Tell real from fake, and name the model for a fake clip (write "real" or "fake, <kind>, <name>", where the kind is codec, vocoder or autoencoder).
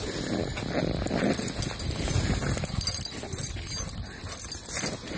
real